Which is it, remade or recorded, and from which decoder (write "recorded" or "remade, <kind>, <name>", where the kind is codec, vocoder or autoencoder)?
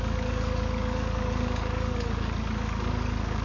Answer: remade, codec, DAC